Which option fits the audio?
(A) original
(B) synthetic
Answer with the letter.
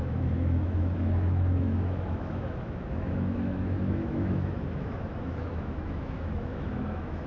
B